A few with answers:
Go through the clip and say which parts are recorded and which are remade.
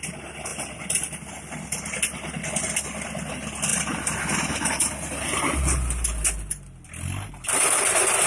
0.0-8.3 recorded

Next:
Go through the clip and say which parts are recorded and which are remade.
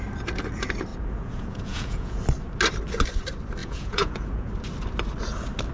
0.0-0.9 recorded; 0.9-2.2 remade; 2.2-3.6 recorded; 3.6-4.5 remade; 4.5-5.7 recorded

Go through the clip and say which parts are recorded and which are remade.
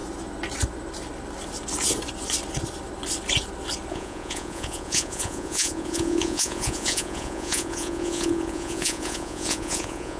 0.0-3.9 recorded; 3.9-10.2 remade